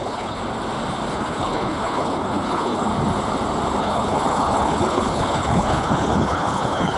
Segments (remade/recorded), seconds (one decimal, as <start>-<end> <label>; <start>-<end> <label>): 0.0-0.4 remade; 0.4-1.1 recorded; 1.1-2.9 remade; 2.9-3.8 recorded; 3.8-7.0 remade